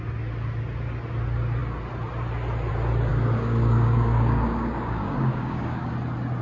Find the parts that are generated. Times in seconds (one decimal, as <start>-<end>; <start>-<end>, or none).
3.1-5.9